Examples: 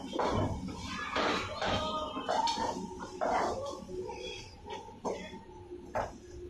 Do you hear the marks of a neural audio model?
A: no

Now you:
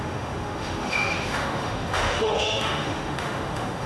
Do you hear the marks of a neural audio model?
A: yes